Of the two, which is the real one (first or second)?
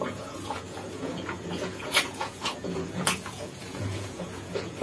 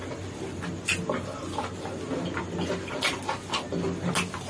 second